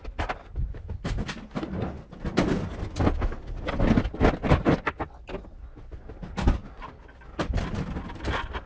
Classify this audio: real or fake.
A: real